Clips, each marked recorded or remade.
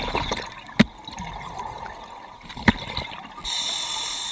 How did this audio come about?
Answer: recorded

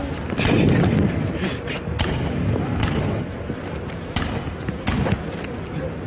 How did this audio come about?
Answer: recorded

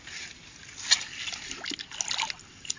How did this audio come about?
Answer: recorded